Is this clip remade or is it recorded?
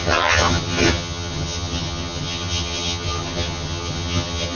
remade